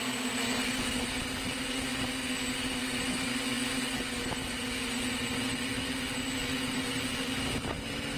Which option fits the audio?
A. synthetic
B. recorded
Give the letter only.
B